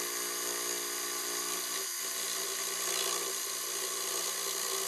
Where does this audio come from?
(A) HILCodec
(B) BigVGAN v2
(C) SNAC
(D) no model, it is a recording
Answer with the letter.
D